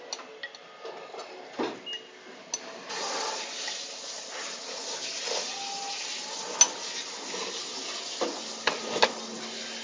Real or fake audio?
real